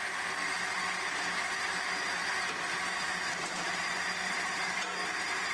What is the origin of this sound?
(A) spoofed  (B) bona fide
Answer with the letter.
B